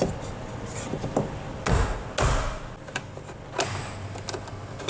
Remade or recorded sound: recorded